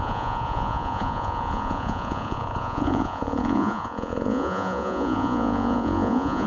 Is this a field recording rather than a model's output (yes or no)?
no